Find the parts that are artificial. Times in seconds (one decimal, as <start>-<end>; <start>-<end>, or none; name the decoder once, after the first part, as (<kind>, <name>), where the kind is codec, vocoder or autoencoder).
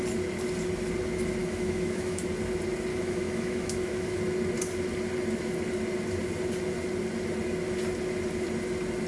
1.4-2.2 (autoencoder, DAC-VAE); 2.9-4.2